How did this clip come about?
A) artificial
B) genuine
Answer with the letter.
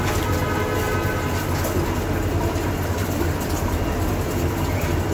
B